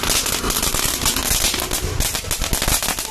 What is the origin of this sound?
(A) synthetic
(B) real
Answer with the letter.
B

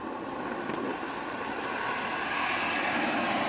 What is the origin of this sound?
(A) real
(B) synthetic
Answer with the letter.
A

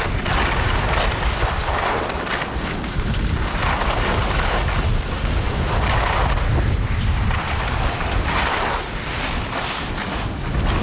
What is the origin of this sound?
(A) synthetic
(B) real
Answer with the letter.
B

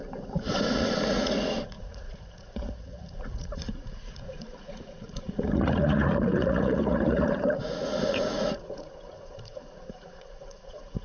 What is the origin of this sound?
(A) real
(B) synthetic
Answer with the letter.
B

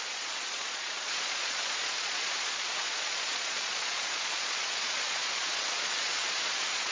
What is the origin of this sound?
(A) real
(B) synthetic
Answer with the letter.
B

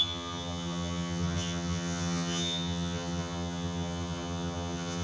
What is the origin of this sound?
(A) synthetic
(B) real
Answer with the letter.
A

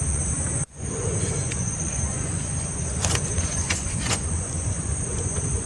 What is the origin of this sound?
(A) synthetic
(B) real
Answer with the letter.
A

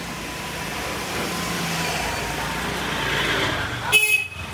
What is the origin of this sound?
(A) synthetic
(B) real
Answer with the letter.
B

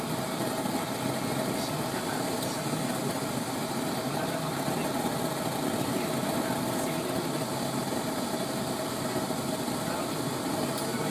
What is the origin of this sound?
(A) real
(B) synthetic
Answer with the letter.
A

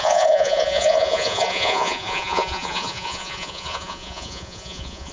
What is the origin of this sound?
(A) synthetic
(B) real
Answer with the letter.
A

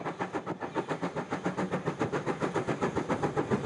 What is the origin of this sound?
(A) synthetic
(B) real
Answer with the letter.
B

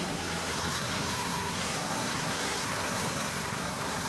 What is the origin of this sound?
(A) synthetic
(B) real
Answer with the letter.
A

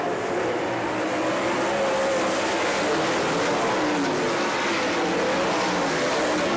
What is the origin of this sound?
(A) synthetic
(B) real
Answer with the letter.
B